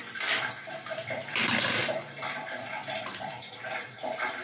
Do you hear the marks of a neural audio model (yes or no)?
yes